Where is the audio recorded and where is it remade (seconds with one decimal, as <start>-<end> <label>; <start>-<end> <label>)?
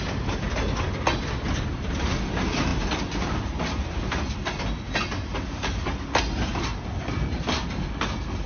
0.0-8.5 recorded